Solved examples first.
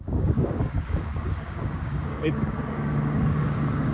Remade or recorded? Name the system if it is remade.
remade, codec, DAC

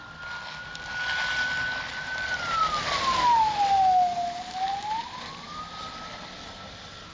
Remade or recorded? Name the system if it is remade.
recorded